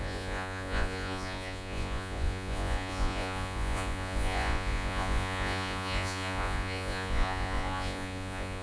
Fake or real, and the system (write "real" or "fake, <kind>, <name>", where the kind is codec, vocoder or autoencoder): fake, vocoder, Vocos